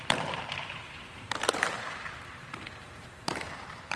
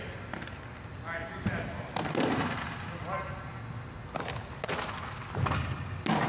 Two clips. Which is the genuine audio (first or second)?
second